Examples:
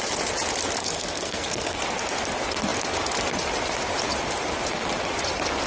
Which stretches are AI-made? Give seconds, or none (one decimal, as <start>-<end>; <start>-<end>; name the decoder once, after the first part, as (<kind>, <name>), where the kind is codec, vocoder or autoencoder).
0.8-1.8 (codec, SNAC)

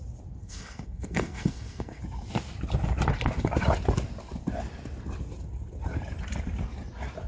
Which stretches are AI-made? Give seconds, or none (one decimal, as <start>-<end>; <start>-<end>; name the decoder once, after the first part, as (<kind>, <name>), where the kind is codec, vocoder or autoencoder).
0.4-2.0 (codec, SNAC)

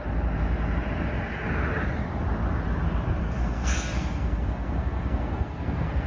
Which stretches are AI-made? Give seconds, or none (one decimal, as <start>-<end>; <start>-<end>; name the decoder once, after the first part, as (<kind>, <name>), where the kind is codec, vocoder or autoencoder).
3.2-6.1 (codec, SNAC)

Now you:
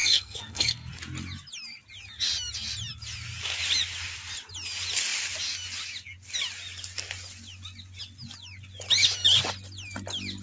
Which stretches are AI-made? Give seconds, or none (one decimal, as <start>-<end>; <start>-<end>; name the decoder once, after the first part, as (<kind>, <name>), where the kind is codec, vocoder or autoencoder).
0.0-0.9 (codec, SNAC)

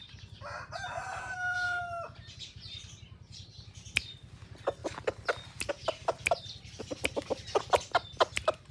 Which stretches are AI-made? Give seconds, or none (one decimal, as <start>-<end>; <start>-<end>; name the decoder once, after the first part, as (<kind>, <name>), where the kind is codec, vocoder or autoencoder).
1.2-1.8 (codec, SNAC)